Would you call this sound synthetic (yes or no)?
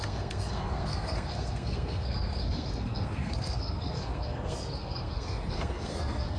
yes